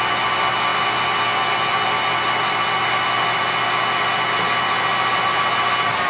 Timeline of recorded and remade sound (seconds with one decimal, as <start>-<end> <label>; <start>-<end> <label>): 0.0-6.1 recorded

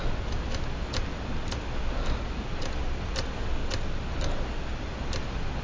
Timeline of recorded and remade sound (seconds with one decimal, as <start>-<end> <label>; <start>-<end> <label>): 0.0-5.6 recorded